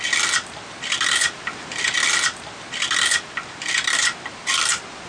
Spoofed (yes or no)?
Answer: no